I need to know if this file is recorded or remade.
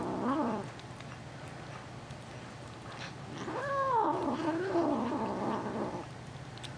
recorded